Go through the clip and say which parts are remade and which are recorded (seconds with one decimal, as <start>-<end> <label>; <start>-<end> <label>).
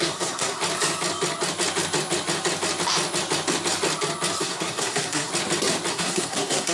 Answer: 0.0-0.6 remade; 0.6-4.4 recorded; 4.4-5.3 remade; 5.3-5.9 recorded; 5.9-6.7 remade